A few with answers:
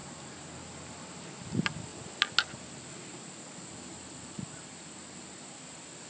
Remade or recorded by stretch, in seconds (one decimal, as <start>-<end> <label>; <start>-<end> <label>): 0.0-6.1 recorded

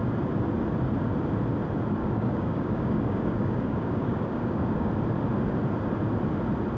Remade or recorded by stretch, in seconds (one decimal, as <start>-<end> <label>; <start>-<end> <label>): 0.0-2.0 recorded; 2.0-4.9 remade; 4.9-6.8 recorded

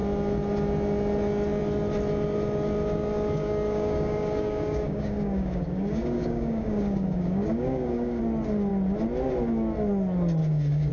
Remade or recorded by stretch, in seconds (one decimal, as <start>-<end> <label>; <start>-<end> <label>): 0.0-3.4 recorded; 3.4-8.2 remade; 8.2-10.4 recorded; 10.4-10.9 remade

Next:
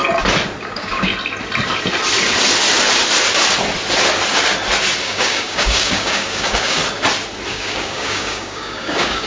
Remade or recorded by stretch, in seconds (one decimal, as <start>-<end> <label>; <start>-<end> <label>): 0.0-0.6 recorded; 0.6-1.1 remade; 1.1-5.0 recorded; 5.0-6.8 remade; 6.8-7.5 recorded; 7.5-9.3 remade

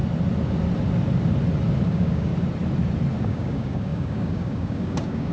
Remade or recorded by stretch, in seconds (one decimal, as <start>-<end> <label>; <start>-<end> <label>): 0.0-1.8 recorded; 1.8-2.3 remade; 2.3-3.2 recorded; 3.2-5.3 remade

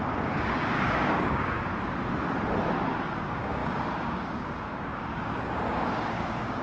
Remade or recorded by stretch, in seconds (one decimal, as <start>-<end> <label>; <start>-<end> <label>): 0.0-1.7 remade; 1.7-3.2 recorded; 3.2-6.6 remade

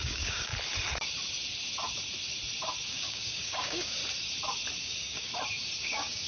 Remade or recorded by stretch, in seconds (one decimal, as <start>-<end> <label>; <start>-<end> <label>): 0.0-0.5 remade; 0.5-2.9 recorded; 2.9-4.0 remade; 4.0-4.8 recorded; 4.8-5.3 remade; 5.3-5.8 recorded; 5.8-6.3 remade

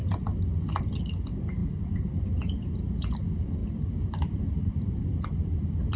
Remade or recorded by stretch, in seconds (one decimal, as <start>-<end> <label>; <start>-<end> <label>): 0.0-6.0 recorded